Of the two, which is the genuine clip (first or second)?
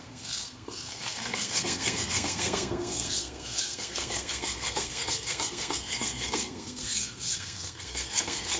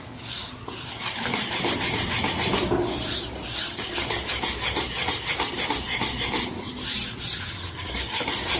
second